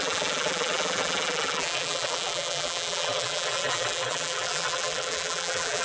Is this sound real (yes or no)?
no